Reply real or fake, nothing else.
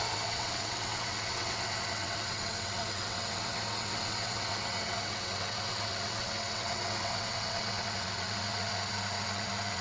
fake